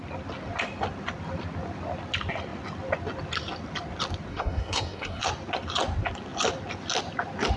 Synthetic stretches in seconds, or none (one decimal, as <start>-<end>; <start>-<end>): 4.3-5.2